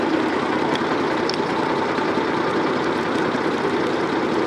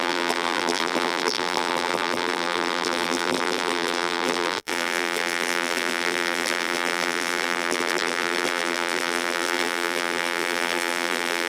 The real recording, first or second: first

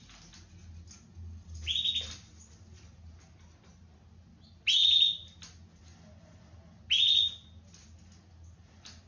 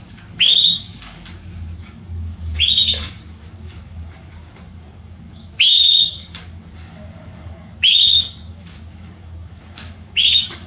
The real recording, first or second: first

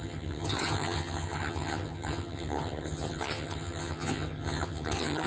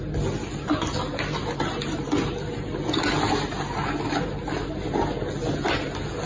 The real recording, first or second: second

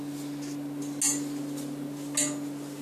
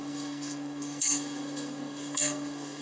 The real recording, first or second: first